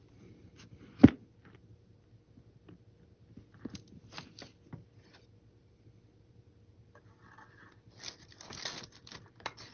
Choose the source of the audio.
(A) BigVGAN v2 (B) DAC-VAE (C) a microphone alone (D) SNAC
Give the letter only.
C